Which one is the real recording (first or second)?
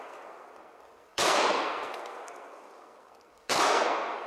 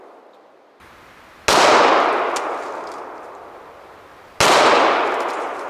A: second